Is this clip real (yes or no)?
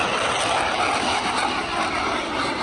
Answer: yes